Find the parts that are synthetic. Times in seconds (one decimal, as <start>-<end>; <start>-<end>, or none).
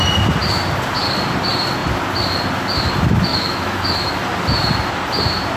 3.3-4.1